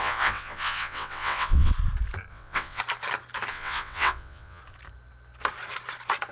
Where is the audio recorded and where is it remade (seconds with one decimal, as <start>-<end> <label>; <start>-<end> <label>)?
0.0-1.7 remade; 1.7-2.3 recorded; 2.3-2.8 remade; 2.8-3.5 recorded; 3.5-4.6 remade; 4.6-6.3 recorded

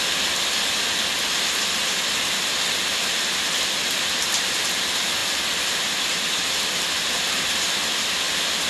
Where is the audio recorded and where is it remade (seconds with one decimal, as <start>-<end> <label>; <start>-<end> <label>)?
0.0-8.7 recorded

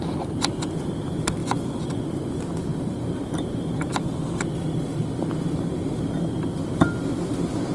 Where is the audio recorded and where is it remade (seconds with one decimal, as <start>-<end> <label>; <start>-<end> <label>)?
0.0-7.7 recorded